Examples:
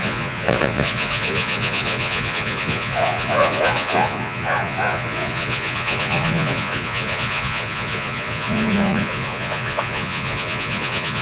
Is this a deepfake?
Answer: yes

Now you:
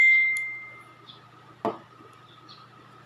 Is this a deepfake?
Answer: no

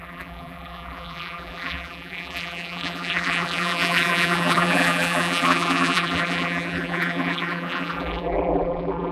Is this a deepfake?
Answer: yes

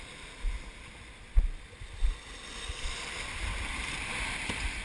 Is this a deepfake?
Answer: no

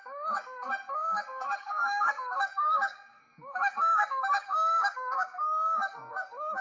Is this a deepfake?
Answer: yes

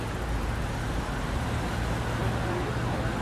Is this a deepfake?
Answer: no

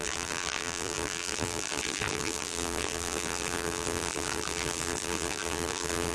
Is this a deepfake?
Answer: yes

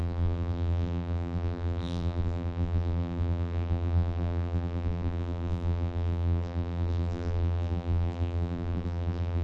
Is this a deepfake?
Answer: yes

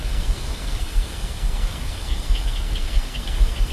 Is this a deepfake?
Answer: yes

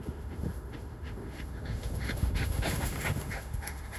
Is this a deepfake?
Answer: yes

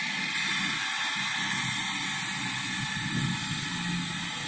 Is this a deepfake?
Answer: no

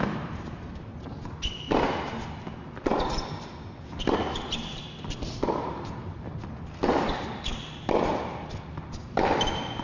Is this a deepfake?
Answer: no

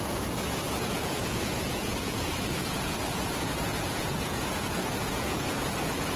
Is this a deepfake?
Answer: yes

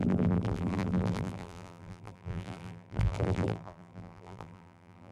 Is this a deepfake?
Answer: yes